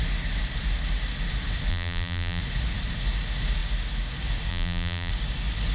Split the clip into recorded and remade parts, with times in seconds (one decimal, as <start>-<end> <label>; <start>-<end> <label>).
0.0-1.7 recorded; 1.7-2.4 remade; 2.4-4.5 recorded; 4.5-5.1 remade; 5.1-5.7 recorded